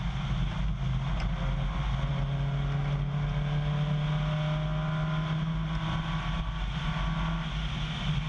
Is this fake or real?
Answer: real